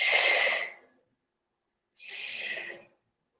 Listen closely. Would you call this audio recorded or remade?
recorded